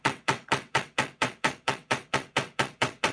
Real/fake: fake